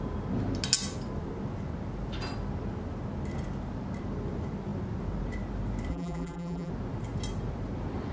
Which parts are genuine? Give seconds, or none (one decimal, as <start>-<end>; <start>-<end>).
0.0-5.9; 6.7-8.1